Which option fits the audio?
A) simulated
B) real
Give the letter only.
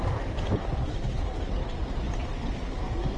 B